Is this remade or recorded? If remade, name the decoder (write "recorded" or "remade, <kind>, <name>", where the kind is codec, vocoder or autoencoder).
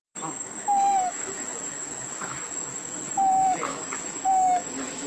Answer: remade, autoencoder, DAC-VAE